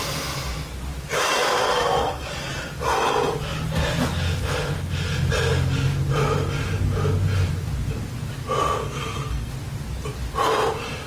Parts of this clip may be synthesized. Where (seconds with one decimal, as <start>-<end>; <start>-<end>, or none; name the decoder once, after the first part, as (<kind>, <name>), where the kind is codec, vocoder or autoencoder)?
1.6-2.3 (codec, SNAC); 8.8-9.5